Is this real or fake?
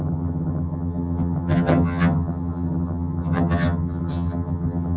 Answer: fake